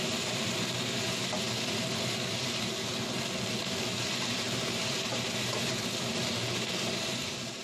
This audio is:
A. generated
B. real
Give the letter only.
B